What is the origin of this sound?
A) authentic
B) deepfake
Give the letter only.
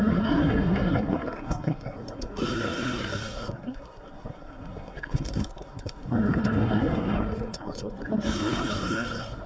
B